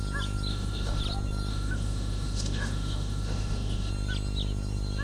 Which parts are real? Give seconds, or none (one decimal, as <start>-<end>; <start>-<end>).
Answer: 0.0-0.5; 1.0-1.5; 3.9-5.0